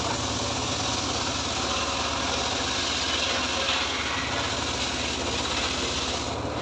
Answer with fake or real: real